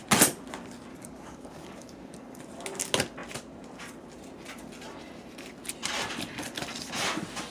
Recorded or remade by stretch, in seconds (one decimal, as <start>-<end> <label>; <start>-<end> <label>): 0.0-0.9 recorded; 0.9-2.4 remade; 2.4-7.5 recorded